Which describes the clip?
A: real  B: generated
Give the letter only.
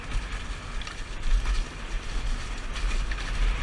A